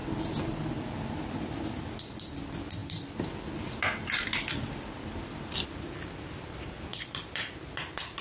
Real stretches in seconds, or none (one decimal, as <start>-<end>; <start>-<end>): 0.8-2.8; 5.5-6.9